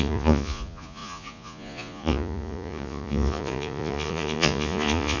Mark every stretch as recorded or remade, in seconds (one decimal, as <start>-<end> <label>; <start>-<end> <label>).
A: 0.0-5.2 remade